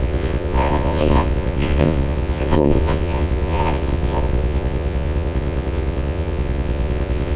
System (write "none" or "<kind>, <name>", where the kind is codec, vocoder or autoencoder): vocoder, Vocos